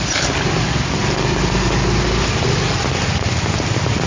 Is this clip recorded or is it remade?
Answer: recorded